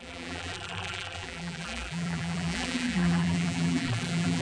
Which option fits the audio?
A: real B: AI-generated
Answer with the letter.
B